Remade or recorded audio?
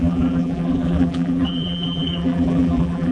remade